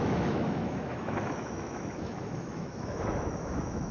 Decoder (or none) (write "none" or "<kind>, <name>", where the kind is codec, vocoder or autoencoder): autoencoder, DAC-VAE